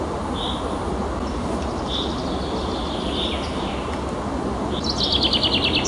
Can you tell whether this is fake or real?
real